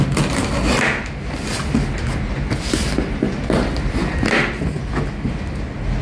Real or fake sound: real